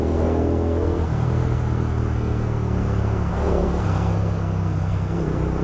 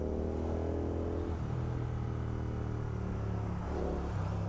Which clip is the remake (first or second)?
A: first